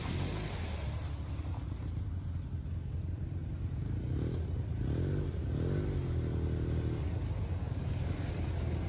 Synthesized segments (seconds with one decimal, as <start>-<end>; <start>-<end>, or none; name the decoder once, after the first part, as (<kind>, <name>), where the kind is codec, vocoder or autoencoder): 7.6-8.3 (codec, DAC)